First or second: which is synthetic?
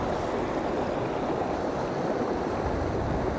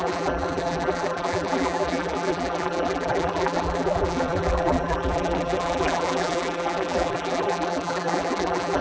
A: second